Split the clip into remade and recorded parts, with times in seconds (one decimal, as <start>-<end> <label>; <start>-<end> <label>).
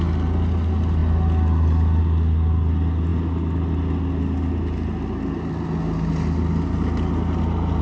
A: 0.0-7.8 recorded